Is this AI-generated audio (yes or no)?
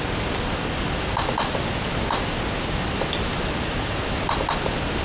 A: no